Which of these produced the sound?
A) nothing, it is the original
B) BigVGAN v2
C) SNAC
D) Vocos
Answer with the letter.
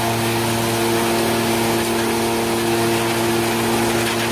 A